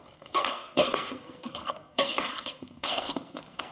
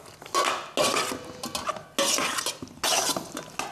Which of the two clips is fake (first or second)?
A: first